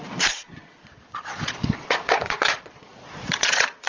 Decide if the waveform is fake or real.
fake